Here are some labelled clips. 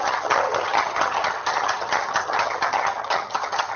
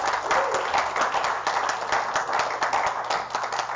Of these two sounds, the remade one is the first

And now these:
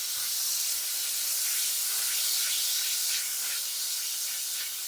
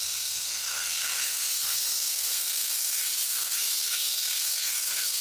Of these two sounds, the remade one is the second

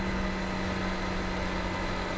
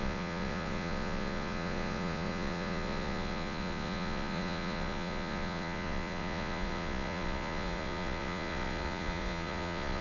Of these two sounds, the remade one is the second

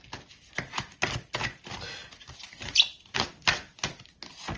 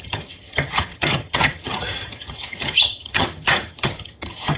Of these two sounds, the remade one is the second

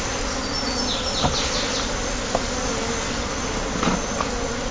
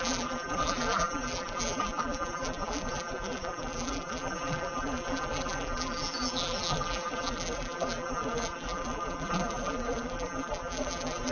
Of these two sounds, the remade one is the second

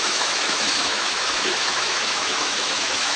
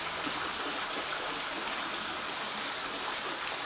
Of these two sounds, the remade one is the first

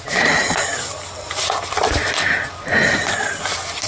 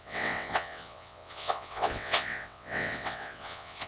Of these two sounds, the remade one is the second